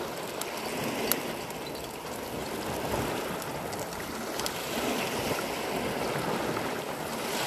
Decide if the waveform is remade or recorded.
recorded